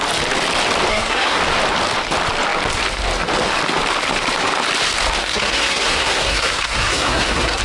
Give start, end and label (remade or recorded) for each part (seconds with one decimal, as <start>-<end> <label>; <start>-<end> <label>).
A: 0.0-0.9 recorded; 0.9-1.4 remade; 1.4-5.2 recorded; 5.2-7.6 remade